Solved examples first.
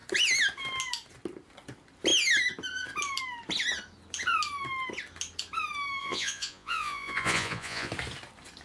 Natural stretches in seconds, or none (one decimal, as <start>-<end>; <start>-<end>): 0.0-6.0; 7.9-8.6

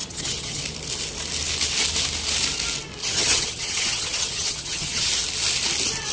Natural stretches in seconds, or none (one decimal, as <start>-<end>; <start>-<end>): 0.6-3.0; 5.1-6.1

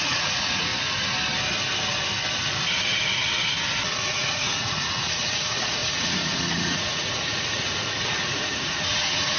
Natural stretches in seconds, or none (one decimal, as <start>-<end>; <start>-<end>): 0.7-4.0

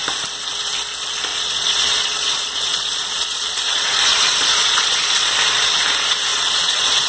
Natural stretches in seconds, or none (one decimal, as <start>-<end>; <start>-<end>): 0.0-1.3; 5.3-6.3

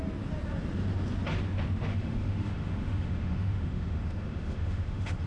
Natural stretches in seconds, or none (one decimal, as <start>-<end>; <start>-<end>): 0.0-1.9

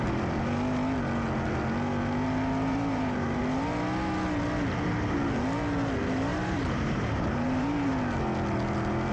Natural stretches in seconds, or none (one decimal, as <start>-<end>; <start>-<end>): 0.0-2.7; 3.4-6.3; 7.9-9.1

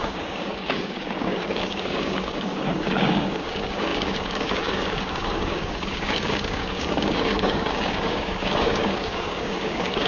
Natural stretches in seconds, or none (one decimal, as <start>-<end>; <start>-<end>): none